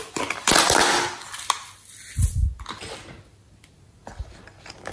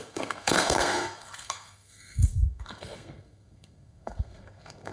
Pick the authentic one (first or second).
first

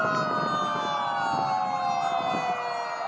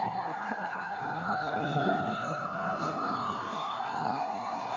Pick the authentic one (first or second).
first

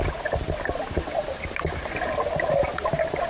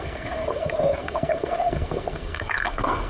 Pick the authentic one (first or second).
first